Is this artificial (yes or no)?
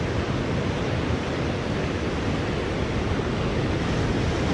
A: no